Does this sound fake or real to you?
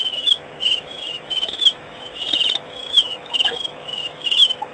fake